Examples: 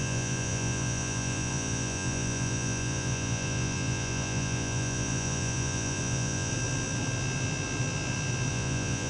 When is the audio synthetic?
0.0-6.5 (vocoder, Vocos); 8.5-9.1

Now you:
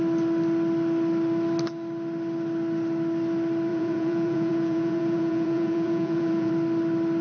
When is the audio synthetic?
3.7-6.5 (vocoder, Vocos)